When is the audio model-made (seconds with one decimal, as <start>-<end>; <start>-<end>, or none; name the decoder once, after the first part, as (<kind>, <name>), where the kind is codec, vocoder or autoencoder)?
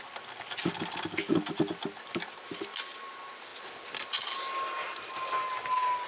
none